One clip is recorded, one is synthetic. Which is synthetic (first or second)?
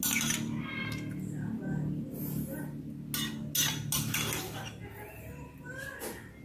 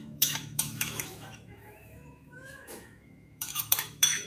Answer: second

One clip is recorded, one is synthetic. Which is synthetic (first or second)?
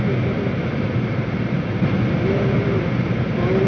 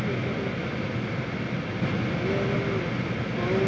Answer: first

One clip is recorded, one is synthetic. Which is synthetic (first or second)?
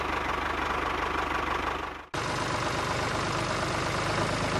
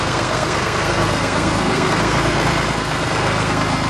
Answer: second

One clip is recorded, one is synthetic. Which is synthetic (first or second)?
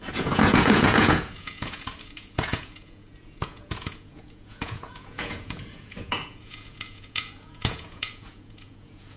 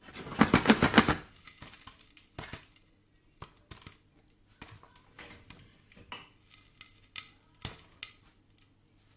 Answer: first